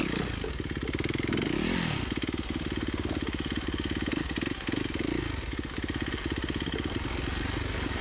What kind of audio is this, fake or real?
real